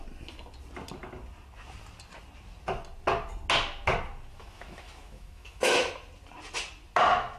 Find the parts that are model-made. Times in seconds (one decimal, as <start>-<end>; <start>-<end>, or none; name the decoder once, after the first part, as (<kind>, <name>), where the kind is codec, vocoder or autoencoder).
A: 4.3-5.9 (autoencoder, DAC-VAE)